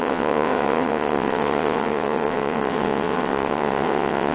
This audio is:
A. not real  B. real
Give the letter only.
A